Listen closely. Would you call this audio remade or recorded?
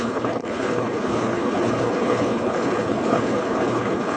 remade